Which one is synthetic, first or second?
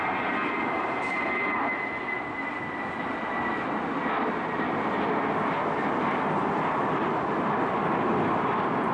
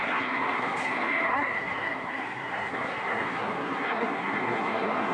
second